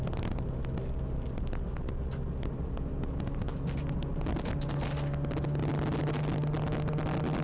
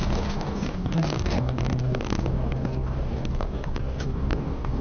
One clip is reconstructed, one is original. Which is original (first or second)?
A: first